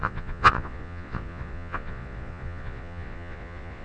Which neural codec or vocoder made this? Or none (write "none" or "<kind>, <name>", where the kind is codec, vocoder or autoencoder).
vocoder, Vocos